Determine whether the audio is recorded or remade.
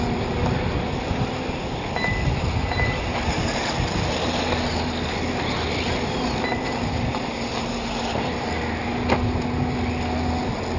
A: recorded